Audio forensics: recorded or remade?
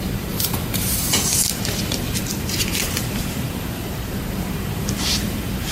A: remade